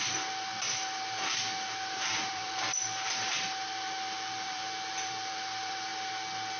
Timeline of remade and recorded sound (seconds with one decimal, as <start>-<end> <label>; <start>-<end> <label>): 0.0-5.9 remade; 5.9-6.6 recorded